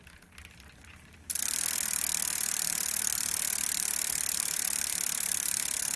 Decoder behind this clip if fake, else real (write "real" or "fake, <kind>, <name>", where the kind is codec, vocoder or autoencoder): real